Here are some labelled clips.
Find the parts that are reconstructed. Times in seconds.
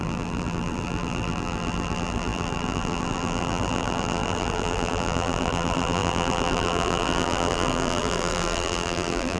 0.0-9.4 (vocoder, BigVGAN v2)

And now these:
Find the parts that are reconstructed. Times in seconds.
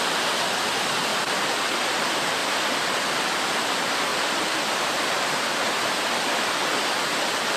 1.1-1.6 (vocoder, BigVGAN v2)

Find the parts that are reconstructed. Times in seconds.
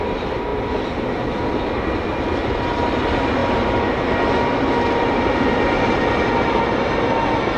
3.4-7.1 (vocoder, BigVGAN v2)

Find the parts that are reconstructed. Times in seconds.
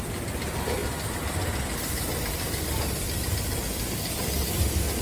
none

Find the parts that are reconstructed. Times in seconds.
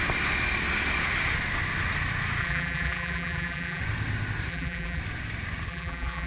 2.4-3.8 (vocoder, BigVGAN v2); 4.5-5.0; 5.7-6.3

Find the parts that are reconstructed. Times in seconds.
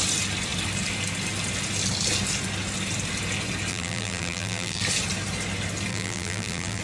3.7-4.8 (vocoder, BigVGAN v2); 5.9-6.8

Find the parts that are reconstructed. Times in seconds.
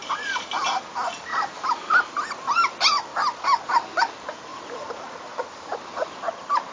0.0-0.8 (vocoder, BigVGAN v2); 3.1-3.6